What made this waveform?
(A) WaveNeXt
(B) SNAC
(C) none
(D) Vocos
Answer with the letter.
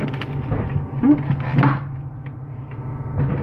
C